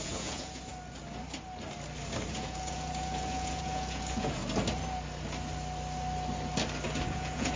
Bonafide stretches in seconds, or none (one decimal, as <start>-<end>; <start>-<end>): 0.7-2.3; 4.4-7.1